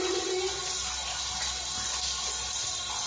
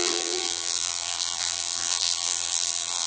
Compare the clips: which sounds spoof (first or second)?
second